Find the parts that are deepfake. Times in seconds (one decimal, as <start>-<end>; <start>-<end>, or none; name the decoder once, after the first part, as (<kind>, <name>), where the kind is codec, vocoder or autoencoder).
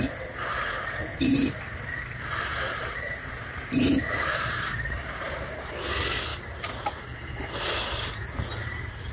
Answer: 2.5-5.7 (vocoder, BigVGAN v2); 6.3-6.9